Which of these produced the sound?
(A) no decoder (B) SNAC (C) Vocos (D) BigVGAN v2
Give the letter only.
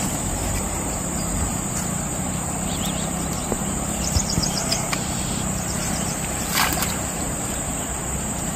D